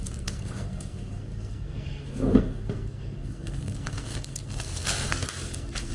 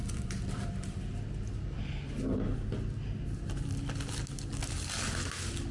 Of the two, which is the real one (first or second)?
second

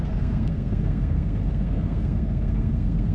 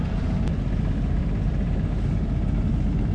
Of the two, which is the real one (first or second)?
second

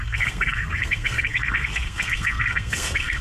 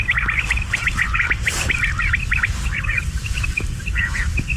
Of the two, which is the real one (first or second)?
second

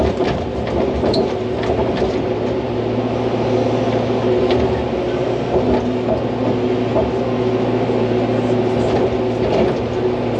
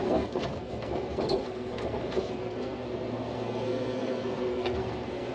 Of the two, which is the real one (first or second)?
first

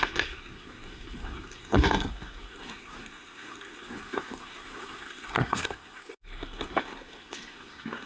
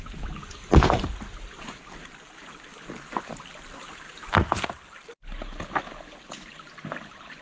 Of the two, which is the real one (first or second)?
second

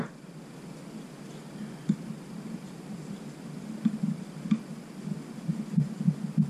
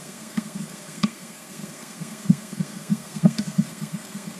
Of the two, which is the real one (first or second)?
first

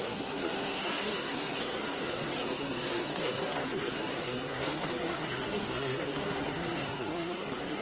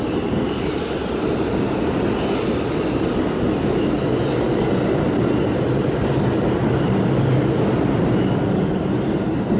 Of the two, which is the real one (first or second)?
second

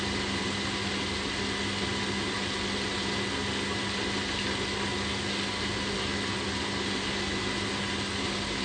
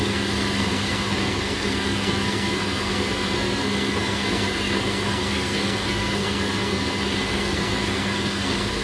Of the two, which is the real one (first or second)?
first